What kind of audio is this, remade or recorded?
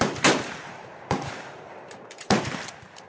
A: remade